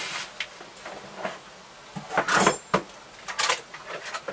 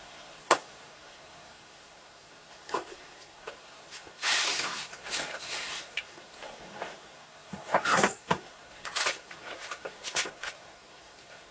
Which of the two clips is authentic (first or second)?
first